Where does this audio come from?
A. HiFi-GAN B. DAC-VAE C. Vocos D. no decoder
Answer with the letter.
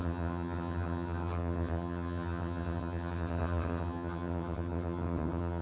A